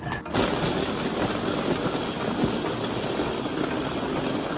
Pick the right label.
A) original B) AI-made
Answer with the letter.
A